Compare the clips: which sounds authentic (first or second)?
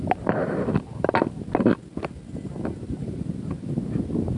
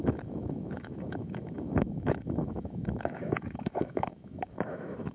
first